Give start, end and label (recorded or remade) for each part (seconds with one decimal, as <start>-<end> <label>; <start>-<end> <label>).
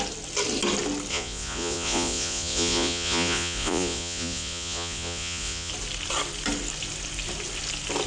0.0-1.1 recorded; 1.1-5.7 remade; 5.7-8.1 recorded